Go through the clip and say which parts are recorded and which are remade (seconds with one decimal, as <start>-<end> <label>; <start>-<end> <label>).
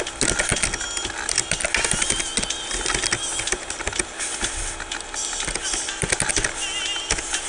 0.0-7.5 recorded